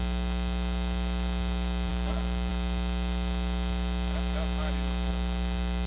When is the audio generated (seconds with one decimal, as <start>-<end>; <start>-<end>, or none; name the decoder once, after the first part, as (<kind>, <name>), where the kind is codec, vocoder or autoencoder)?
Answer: 1.9-2.5 (autoencoder, DAC-VAE); 5.1-5.9

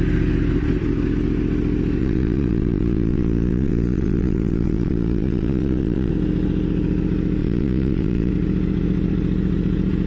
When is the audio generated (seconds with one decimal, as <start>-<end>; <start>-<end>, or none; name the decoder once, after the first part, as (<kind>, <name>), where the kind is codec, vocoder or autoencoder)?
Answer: 2.0-6.1 (vocoder, Vocos); 7.4-8.3

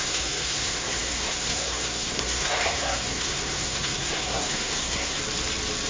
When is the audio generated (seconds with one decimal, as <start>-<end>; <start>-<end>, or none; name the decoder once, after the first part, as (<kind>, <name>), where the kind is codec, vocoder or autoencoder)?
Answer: 0.0-5.2 (codec, SNAC)

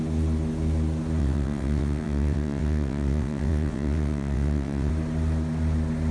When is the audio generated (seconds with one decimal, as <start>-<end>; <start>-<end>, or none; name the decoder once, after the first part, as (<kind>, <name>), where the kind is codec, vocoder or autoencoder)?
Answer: 1.2-4.9 (vocoder, WaveNeXt)

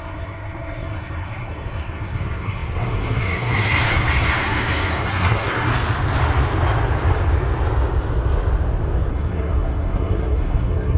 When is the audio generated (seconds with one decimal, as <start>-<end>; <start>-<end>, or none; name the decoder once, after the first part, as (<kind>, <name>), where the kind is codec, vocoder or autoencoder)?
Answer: 0.0-5.7 (codec, SNAC); 9.1-11.0

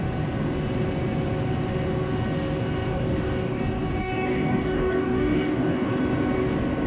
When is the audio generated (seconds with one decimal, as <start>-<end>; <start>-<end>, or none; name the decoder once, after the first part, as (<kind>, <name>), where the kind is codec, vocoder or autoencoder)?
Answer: 2.9-3.6 (codec, DAC); 4.0-5.9

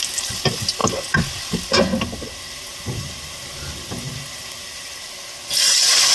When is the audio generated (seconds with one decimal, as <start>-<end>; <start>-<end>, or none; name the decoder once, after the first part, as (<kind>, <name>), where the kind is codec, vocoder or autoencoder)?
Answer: none